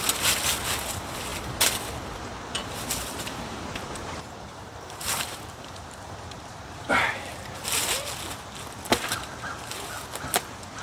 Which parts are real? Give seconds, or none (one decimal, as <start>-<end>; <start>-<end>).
0.0-2.6; 7.8-10.8